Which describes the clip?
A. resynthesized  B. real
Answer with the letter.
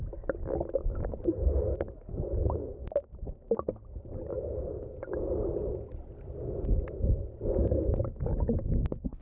B